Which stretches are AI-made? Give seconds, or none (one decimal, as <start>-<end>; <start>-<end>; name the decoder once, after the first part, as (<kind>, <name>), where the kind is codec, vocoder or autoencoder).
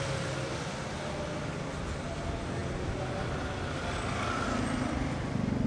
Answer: none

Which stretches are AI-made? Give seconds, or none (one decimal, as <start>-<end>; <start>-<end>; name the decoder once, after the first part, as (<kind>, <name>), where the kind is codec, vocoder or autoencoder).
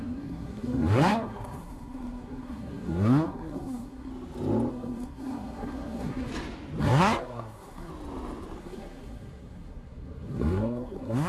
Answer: 0.0-4.1 (codec, SNAC); 4.7-6.3; 6.8-7.9; 8.6-11.3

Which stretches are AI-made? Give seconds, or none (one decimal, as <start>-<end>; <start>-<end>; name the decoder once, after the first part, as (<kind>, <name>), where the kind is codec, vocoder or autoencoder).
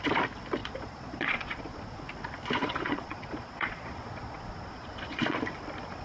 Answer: 0.6-2.0 (vocoder, Vocos); 2.6-5.4